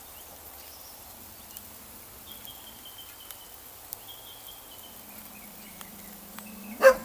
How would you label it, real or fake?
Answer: real